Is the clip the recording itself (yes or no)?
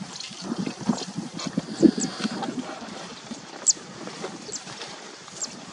yes